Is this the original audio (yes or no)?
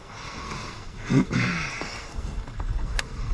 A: no